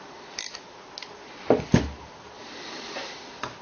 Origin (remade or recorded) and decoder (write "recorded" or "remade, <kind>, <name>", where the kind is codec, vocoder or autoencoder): recorded